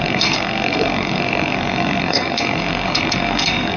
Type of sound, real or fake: fake